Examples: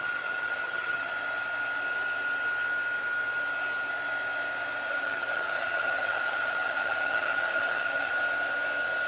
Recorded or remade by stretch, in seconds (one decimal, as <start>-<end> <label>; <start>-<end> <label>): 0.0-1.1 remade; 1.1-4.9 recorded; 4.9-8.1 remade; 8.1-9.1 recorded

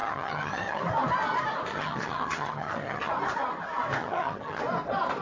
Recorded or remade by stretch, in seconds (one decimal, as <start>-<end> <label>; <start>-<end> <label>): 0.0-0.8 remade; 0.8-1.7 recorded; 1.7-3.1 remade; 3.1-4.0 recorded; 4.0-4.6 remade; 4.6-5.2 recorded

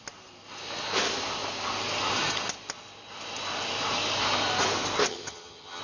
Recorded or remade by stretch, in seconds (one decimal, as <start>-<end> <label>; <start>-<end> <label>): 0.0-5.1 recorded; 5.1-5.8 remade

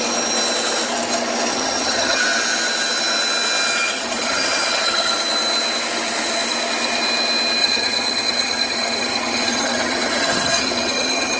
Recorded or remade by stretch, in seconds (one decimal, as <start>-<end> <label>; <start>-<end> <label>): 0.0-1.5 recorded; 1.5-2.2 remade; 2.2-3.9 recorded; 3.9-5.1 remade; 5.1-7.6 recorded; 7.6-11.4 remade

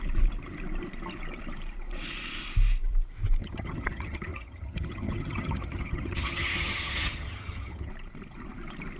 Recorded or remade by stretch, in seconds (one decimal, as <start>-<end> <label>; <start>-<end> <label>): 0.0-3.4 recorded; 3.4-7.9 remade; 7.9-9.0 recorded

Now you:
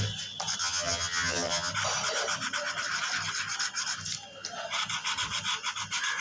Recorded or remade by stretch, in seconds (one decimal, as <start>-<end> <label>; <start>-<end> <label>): 0.0-0.6 recorded; 0.6-1.7 remade; 1.7-6.2 recorded